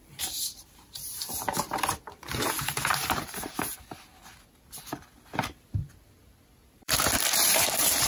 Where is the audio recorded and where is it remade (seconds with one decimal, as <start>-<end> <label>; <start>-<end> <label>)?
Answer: 0.0-4.1 remade; 4.1-6.7 recorded; 6.7-8.1 remade

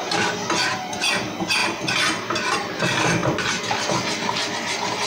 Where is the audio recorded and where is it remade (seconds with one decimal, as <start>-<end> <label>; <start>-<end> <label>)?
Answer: 0.0-5.1 recorded